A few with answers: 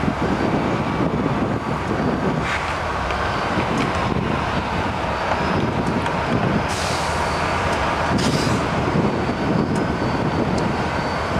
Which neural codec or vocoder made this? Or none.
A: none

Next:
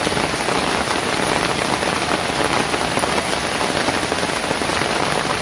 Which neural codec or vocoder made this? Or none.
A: none